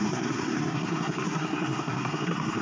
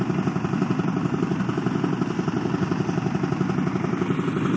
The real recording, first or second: second